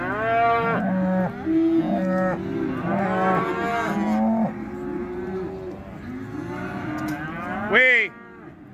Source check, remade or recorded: recorded